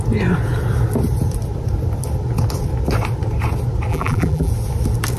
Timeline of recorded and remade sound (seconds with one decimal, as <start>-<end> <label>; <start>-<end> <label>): 0.0-3.9 recorded; 3.9-4.5 remade; 4.5-5.2 recorded